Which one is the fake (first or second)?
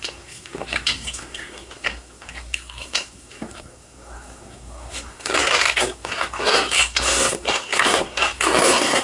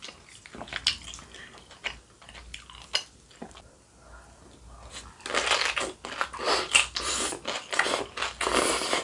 first